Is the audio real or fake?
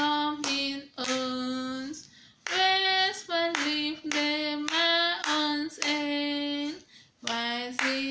real